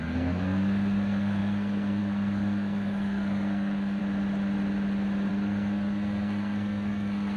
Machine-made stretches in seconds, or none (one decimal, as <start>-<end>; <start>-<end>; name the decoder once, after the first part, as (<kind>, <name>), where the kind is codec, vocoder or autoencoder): 0.0-4.0 (codec, SNAC); 5.3-7.4